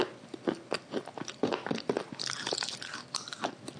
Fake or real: real